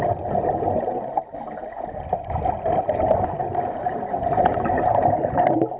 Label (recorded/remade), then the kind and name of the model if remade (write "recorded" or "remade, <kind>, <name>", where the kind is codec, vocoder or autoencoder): recorded